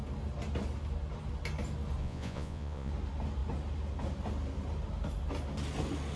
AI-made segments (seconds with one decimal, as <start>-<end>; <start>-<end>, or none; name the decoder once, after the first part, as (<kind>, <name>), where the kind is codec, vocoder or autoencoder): 2.0-2.9 (vocoder, Vocos)